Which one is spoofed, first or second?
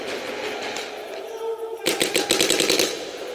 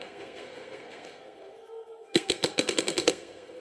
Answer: second